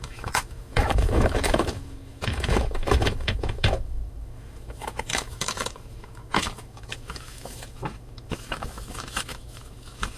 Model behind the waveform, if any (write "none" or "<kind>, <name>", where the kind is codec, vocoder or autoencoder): autoencoder, DAC-VAE